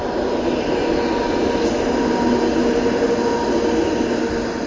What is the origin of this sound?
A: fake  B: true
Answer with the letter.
B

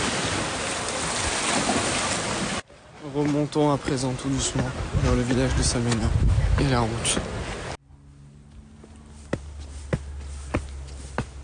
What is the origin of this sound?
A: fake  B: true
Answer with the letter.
B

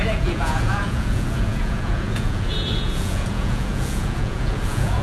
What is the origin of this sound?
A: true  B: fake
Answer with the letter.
B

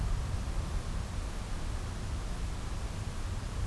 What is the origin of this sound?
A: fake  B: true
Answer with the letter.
B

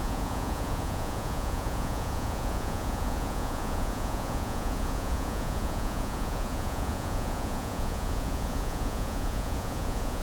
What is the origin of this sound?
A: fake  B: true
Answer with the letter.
A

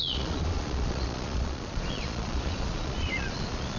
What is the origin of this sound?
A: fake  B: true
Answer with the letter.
A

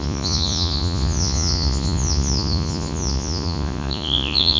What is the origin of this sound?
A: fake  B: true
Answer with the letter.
A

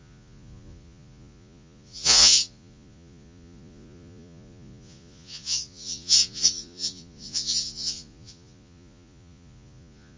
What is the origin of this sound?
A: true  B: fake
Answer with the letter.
B